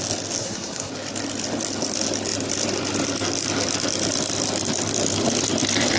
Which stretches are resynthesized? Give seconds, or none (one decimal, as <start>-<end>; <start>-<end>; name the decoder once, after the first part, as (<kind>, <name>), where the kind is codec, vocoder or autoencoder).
0.4-0.9 (codec, SNAC)